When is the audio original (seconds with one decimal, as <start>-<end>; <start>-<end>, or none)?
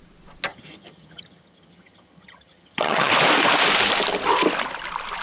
0.0-0.5; 3.1-5.2